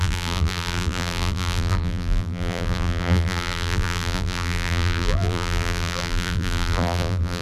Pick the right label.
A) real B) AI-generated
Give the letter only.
B